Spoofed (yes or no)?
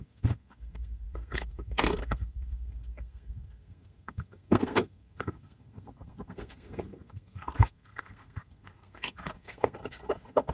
yes